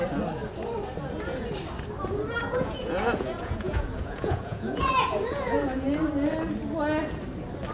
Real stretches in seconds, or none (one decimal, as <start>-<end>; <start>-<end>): 0.0-2.4; 6.0-7.7